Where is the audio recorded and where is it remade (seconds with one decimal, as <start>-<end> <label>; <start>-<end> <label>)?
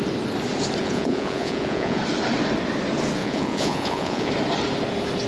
0.0-0.8 recorded; 0.8-2.0 remade; 2.0-3.2 recorded; 3.2-4.3 remade; 4.3-5.3 recorded